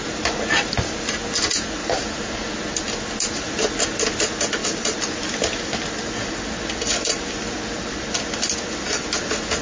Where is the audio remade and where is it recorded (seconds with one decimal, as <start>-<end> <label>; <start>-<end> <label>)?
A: 0.0-1.8 recorded; 1.8-2.3 remade; 2.3-4.6 recorded; 4.6-9.2 remade; 9.2-9.6 recorded